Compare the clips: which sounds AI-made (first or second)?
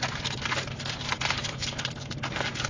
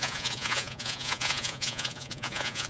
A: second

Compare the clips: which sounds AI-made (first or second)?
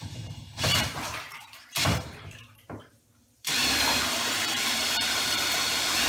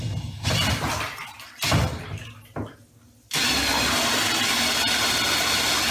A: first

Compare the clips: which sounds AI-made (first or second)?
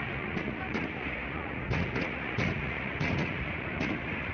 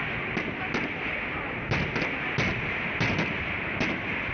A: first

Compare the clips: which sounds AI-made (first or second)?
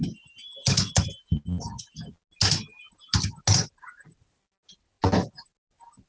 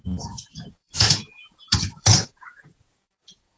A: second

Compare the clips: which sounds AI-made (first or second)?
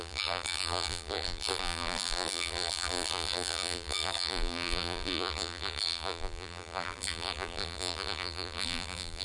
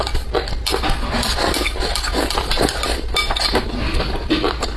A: first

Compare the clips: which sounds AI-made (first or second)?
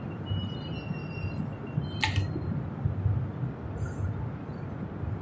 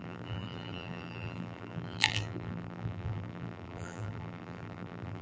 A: second